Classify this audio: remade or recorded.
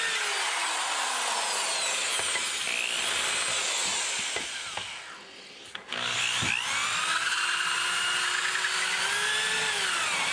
recorded